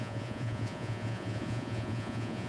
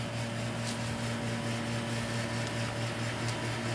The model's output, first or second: first